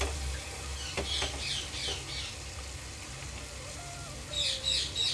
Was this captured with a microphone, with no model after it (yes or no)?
yes